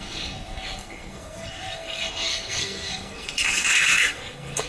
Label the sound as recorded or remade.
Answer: remade